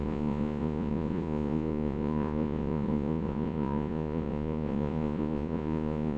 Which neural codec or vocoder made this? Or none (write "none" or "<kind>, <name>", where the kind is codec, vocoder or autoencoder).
vocoder, Vocos